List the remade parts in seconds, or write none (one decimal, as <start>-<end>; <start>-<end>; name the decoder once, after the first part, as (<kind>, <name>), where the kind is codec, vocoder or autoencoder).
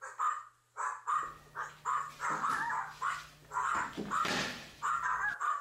none